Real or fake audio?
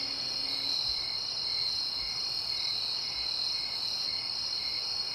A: real